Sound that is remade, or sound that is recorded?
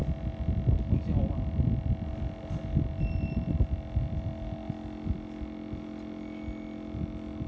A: recorded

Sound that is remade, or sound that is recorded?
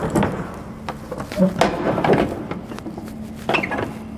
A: recorded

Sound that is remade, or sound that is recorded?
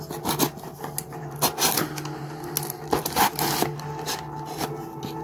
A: recorded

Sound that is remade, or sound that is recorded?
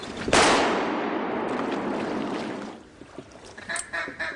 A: remade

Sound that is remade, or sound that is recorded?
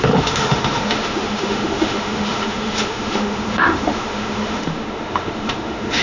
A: remade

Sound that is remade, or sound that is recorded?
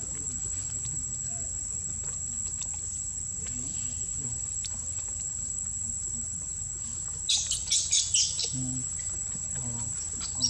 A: recorded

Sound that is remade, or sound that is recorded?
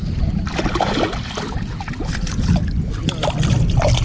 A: recorded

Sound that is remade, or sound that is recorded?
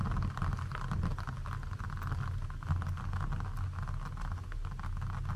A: recorded